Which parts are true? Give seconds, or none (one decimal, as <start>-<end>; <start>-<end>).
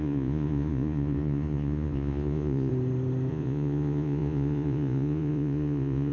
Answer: 2.7-3.3